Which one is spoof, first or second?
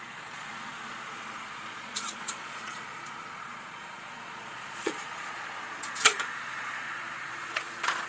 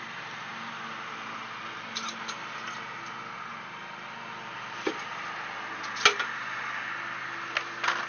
first